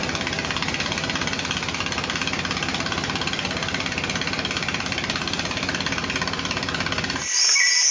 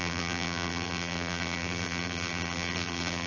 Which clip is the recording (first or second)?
first